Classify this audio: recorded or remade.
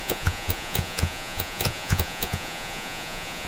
remade